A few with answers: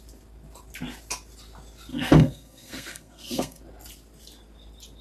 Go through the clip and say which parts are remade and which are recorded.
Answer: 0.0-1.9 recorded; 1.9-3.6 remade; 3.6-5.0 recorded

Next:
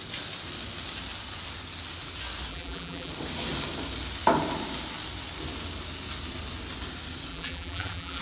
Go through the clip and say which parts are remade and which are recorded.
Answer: 0.0-2.5 recorded; 2.5-3.1 remade; 3.1-7.3 recorded; 7.3-8.2 remade

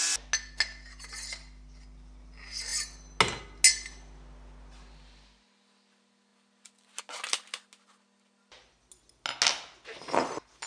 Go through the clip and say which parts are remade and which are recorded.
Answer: 0.0-10.7 recorded

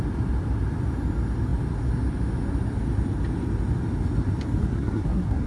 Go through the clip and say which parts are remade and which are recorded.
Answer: 0.0-4.6 recorded; 4.6-5.5 remade

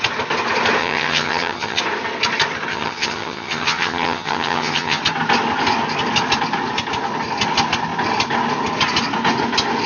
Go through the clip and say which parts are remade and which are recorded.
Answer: 0.0-0.8 recorded; 0.8-1.8 remade; 1.8-2.7 recorded; 2.7-5.0 remade; 5.0-9.9 recorded

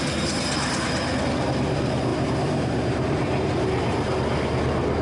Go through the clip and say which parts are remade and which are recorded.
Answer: 0.0-2.1 recorded; 2.1-3.5 remade; 3.5-5.0 recorded